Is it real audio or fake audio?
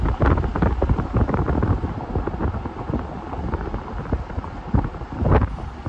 real